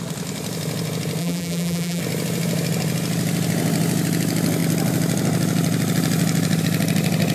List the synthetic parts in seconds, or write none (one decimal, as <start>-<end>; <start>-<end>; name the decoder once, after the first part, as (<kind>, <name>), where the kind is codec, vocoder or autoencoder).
1.2-2.0 (vocoder, BigVGAN v2)